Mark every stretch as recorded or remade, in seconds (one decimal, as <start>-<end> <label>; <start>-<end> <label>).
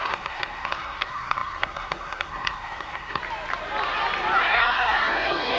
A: 0.0-3.2 remade; 3.2-4.4 recorded; 4.4-5.6 remade